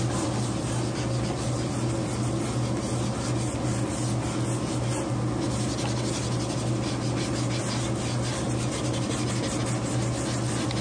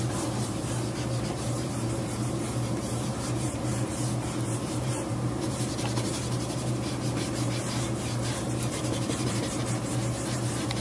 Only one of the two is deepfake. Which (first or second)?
second